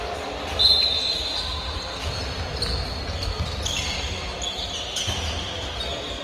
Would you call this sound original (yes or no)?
yes